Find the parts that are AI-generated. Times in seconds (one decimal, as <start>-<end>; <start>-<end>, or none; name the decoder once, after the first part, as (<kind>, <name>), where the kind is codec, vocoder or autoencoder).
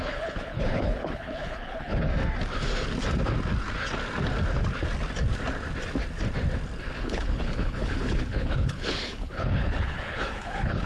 0.0-2.1 (codec, HILCodec); 6.8-10.9